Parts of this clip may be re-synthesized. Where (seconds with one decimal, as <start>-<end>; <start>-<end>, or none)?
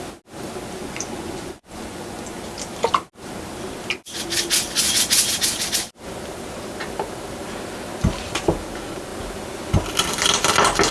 0.8-2.4